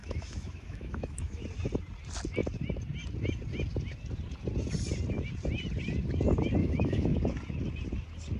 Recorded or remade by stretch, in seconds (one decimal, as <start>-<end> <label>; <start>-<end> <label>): 0.0-1.4 remade; 1.4-6.6 recorded; 6.6-7.2 remade; 7.2-8.4 recorded